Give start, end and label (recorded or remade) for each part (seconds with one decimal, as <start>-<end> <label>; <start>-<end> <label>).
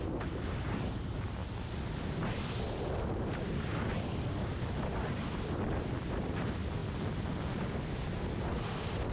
0.0-9.1 recorded